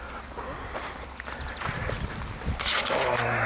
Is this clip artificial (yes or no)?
no